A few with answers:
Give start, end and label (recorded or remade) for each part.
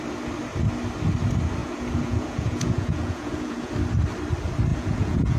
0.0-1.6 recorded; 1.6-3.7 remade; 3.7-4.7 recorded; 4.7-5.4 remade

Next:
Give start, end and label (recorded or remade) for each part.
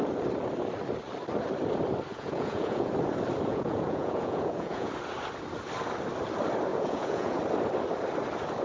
0.0-2.1 recorded; 2.1-2.9 remade; 2.9-3.5 recorded; 3.5-4.9 remade; 4.9-6.7 recorded; 6.7-7.4 remade; 7.4-8.6 recorded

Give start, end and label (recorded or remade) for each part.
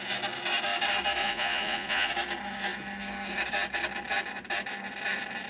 0.0-1.2 recorded; 1.2-2.1 remade; 2.1-5.5 recorded